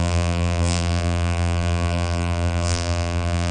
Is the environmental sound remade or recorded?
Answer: remade